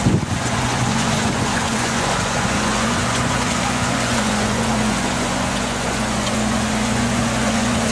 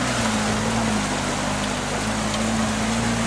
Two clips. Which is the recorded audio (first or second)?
second